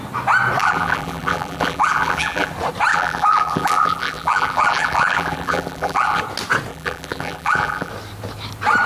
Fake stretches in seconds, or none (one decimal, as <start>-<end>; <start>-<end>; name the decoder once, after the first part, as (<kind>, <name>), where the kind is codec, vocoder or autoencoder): 0.6-2.5 (vocoder, BigVGAN v2); 2.9-6.2; 6.7-7.9